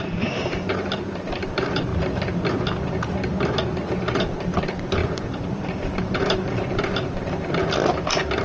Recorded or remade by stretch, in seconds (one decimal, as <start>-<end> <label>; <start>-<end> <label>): 0.0-1.9 remade; 1.9-4.2 recorded; 4.2-7.6 remade; 7.6-8.4 recorded